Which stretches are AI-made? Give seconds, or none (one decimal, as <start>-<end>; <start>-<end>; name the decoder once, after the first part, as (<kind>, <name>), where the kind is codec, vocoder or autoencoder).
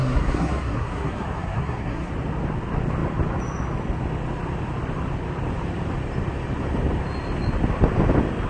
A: 0.0-2.1 (codec, SNAC)